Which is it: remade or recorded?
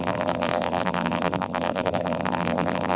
remade